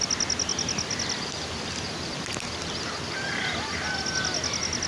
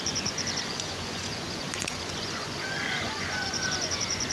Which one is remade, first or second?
second